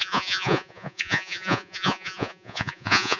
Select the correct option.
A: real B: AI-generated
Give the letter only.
B